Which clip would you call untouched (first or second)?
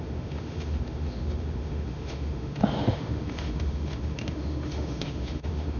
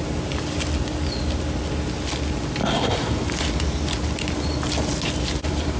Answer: second